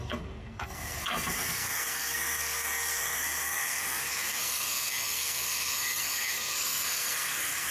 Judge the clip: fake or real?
fake